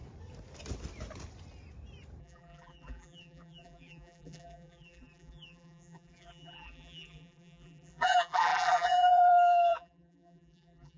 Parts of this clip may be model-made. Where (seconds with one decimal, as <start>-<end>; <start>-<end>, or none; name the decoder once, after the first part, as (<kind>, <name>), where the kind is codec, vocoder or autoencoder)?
2.2-11.0 (vocoder, BigVGAN v2)